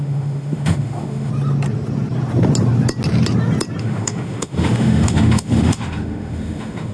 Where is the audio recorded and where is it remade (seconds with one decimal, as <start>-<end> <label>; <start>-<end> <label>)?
0.0-1.3 remade; 1.3-3.8 recorded; 3.8-6.9 remade